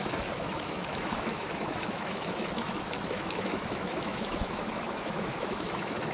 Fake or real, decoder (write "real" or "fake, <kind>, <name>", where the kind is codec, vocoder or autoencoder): fake, autoencoder, DAC-VAE